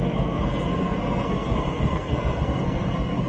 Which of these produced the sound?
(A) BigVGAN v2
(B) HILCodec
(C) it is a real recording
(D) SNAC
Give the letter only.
D